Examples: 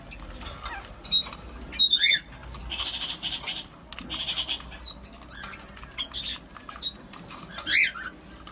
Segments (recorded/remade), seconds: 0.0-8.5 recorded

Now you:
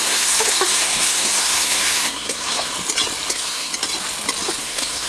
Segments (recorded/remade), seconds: 0.0-2.7 remade; 2.7-3.3 recorded; 3.3-3.7 remade; 3.7-4.6 recorded; 4.6-5.1 remade

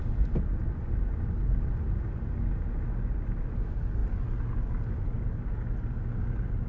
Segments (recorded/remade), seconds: 0.0-6.7 recorded

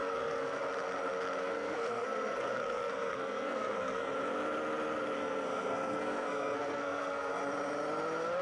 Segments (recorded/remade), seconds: 0.0-0.6 remade; 0.6-1.4 recorded; 1.4-4.1 remade; 4.1-5.2 recorded; 5.2-7.3 remade; 7.3-8.4 recorded

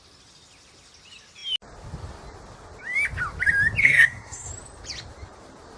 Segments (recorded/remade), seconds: 0.0-3.8 recorded; 3.8-4.5 remade; 4.5-5.8 recorded

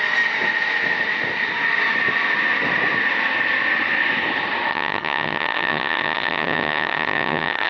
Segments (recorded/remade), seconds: 0.0-4.7 recorded; 4.7-7.7 remade